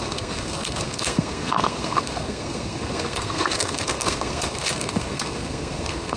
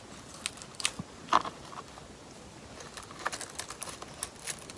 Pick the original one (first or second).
second